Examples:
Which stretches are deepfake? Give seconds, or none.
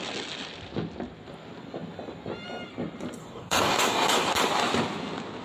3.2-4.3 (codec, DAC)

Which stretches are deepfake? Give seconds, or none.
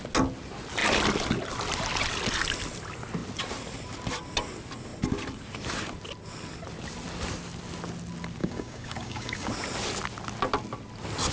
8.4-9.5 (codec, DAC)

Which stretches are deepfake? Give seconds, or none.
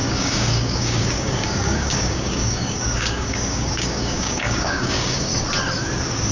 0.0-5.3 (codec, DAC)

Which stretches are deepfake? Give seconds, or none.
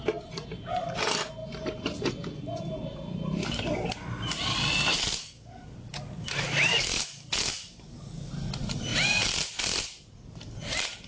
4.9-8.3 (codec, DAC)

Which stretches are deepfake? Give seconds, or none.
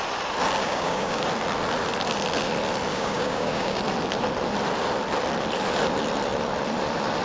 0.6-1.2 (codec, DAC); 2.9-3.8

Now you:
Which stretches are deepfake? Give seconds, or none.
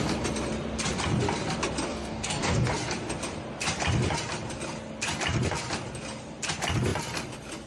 1.9-2.7 (codec, DAC)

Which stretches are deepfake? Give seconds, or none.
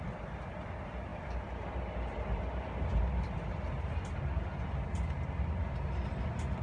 none